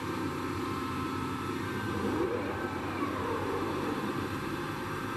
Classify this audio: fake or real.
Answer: fake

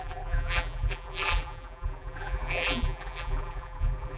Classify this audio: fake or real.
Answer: fake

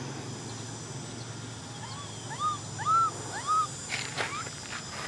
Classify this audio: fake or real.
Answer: real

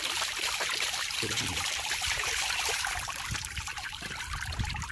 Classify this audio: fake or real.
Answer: fake